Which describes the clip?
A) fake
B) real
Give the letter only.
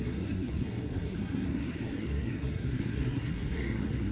A